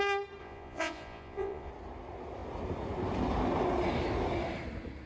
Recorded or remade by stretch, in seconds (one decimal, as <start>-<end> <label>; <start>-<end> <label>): 0.0-0.4 recorded; 0.4-1.7 remade; 1.7-5.1 recorded